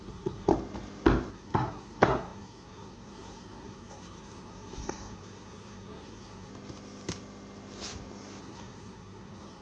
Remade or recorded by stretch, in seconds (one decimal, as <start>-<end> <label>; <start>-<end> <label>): 0.0-0.5 remade; 0.5-1.3 recorded; 1.3-6.5 remade; 6.5-8.4 recorded; 8.4-9.6 remade